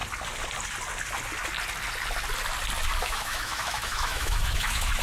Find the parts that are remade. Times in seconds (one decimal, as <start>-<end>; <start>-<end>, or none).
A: 3.0-5.0